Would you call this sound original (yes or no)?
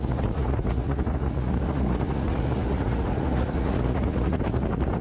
no